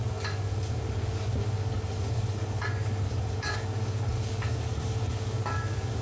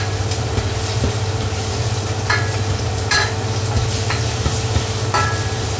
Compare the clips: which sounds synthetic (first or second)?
first